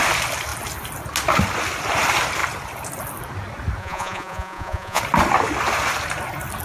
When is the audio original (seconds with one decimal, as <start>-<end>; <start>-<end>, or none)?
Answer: 0.0-3.8; 5.0-6.6